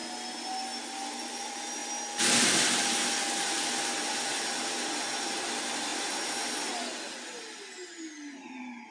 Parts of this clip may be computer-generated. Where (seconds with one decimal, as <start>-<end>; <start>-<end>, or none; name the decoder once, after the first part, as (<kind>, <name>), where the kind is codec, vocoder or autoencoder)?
none